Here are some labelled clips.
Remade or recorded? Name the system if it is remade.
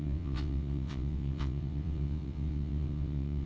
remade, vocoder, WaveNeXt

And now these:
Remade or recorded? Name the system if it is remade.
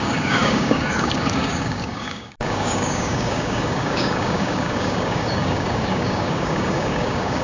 remade, codec, DAC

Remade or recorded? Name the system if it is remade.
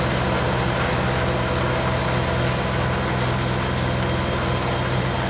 recorded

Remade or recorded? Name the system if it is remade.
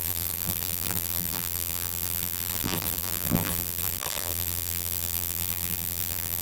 remade, vocoder, BigVGAN v2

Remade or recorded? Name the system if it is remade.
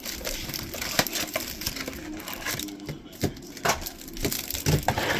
recorded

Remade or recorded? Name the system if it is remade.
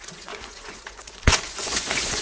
remade, vocoder, Vocos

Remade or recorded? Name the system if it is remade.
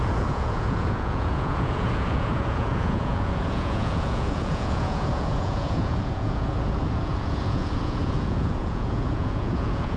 remade, vocoder, Vocos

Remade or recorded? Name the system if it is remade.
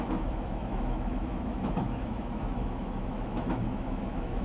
remade, autoencoder, DAC-VAE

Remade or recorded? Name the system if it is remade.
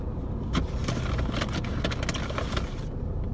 recorded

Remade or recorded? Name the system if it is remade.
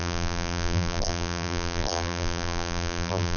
remade, vocoder, BigVGAN v2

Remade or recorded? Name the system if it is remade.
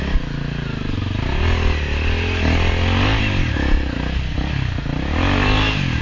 recorded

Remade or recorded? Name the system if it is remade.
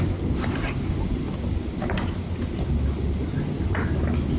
recorded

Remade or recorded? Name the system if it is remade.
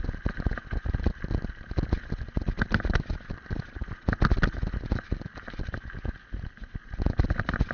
recorded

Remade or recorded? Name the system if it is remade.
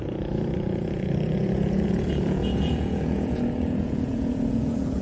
remade, vocoder, Vocos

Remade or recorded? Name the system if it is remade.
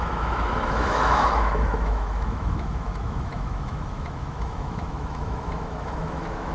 remade, autoencoder, DAC-VAE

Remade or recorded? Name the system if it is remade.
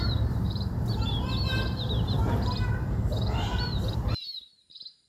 remade, vocoder, BigVGAN v2